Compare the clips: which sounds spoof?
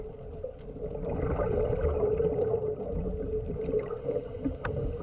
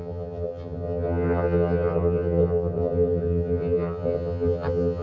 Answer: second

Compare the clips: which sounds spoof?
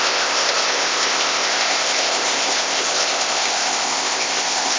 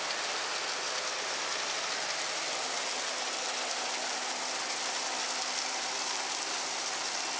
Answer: first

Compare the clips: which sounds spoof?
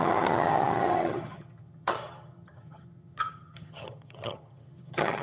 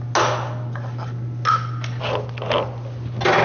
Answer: first